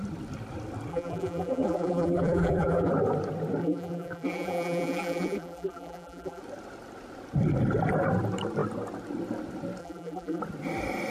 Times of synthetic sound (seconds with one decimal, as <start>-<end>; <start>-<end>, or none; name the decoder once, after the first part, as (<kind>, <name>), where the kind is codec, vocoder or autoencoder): 0.9-2.9 (vocoder, BigVGAN v2); 3.6-6.4; 9.8-10.4